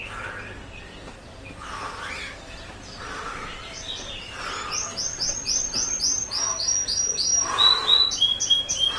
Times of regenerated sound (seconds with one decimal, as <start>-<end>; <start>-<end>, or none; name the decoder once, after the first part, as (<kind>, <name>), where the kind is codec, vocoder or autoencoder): none